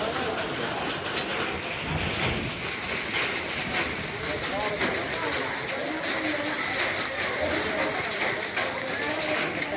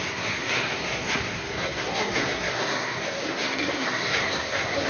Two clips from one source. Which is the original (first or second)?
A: first